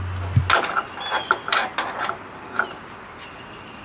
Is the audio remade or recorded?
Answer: recorded